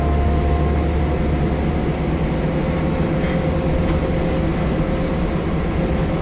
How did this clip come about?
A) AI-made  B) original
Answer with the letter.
B